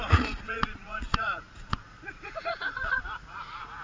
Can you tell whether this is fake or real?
fake